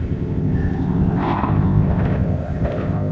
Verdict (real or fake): fake